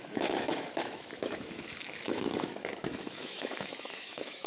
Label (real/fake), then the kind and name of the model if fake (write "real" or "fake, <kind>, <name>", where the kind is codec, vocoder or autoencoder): fake, autoencoder, DAC-VAE